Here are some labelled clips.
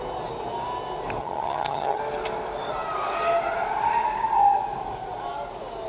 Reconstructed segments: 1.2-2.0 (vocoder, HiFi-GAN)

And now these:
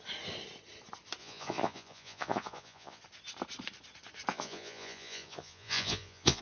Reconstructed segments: 1.2-3.0 (vocoder, Vocos); 4.3-6.4

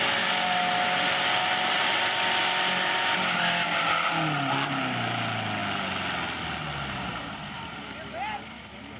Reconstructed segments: none

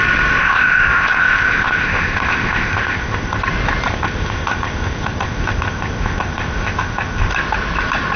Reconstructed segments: 0.4-3.4 (codec, ZipCodec); 3.9-7.3

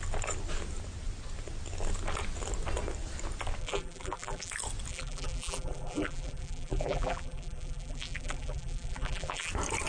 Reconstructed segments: 3.6-4.5 (vocoder, BigVGAN v2); 4.9-9.5